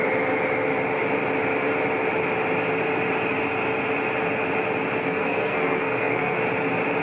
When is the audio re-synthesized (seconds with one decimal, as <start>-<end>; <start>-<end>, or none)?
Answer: 5.0-6.4